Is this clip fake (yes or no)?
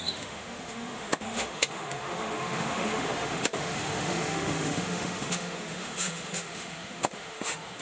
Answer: yes